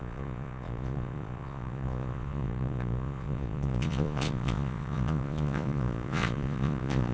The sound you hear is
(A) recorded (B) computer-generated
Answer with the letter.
B